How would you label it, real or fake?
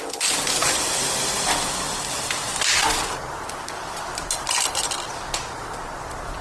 real